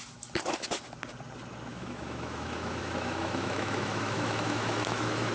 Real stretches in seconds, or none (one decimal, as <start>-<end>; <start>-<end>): 0.0-1.7